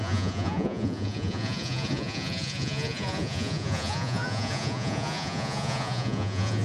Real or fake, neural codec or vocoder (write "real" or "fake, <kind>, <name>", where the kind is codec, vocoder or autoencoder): fake, vocoder, Vocos